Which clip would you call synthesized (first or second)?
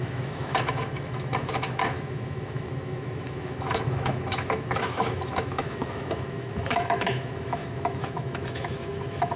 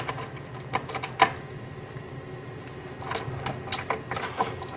first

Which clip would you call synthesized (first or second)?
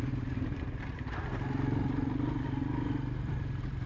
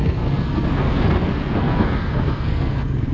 second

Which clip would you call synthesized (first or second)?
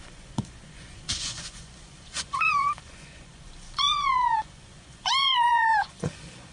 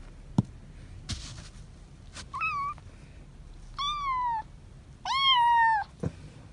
first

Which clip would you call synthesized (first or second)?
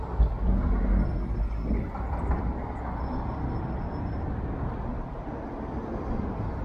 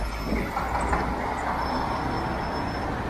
first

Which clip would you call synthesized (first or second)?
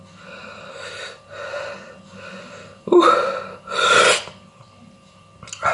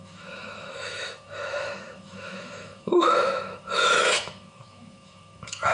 second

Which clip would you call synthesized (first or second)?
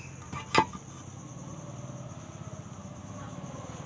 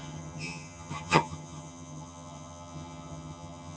second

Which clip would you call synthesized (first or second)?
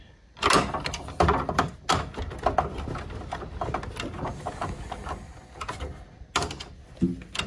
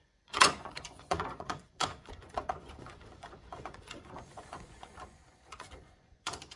second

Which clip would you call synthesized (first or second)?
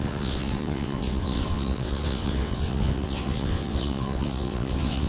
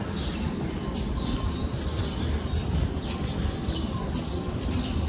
first